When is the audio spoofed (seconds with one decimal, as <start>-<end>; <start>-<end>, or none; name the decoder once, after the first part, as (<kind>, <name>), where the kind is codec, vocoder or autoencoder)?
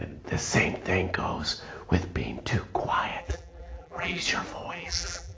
3.2-4.2 (vocoder, BigVGAN v2); 4.7-5.4